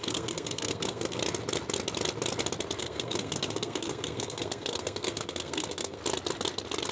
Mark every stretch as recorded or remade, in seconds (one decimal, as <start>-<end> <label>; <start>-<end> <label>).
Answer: 0.0-1.2 remade; 1.2-2.8 recorded; 2.8-6.0 remade; 6.0-6.9 recorded